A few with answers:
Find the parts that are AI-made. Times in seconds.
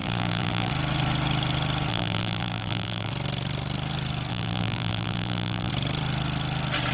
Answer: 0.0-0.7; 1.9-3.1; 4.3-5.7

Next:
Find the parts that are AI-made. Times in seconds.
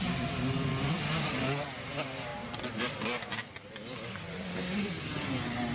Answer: none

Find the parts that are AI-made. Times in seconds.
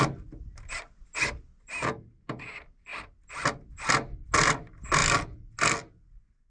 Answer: none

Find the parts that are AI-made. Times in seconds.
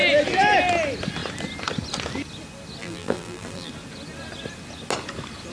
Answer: 2.8-3.7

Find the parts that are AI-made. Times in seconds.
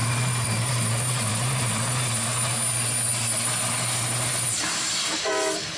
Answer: 0.0-0.7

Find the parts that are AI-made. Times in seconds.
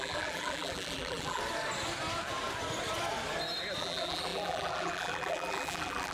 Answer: 0.0-1.4; 3.8-6.1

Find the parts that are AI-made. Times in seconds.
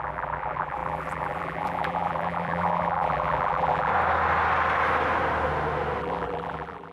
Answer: 0.0-3.9; 6.0-6.9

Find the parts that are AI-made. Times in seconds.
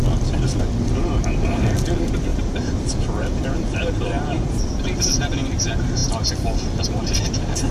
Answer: 2.3-4.6